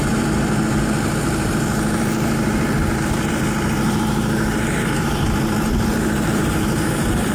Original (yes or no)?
no